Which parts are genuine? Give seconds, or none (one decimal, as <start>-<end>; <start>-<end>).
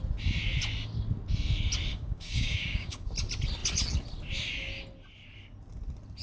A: 0.0-1.9; 3.1-6.2